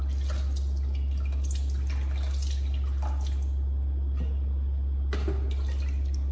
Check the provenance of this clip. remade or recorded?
recorded